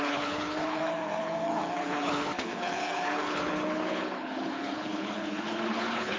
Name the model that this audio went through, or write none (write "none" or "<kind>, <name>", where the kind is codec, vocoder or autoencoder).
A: codec, HILCodec